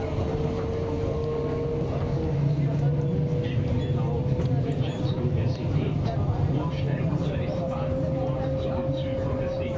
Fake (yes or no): no